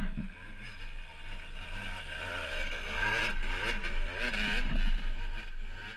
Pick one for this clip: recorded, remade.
recorded